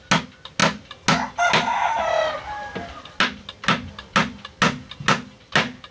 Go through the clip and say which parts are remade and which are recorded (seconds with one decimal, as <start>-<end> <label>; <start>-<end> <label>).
0.0-5.9 recorded